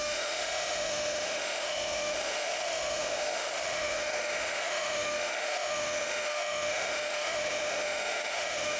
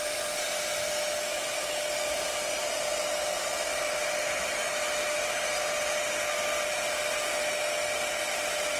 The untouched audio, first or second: second